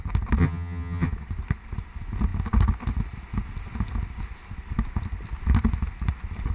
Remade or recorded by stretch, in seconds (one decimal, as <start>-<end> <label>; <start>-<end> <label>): 0.0-0.4 recorded; 0.4-1.1 remade; 1.1-6.5 recorded